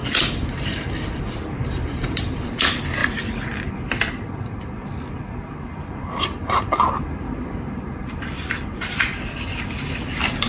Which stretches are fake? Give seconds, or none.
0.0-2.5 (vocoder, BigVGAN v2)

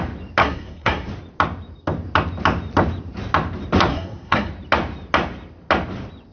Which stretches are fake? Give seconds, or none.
0.4-1.1 (codec, SNAC); 3.9-4.5

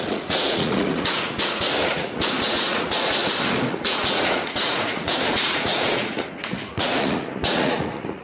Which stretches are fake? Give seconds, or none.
0.0-3.2 (vocoder, Vocos); 3.7-8.2